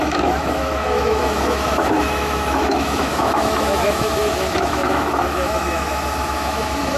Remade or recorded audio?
remade